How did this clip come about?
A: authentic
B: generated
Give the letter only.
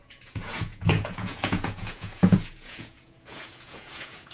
B